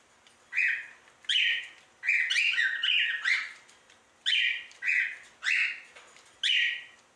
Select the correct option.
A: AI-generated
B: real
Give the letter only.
B